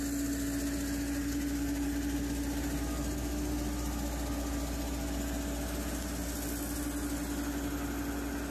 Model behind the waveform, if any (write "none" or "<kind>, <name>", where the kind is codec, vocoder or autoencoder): none